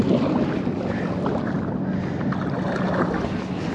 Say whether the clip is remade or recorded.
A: recorded